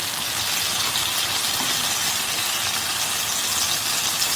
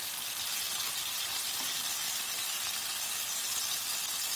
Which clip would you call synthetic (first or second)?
second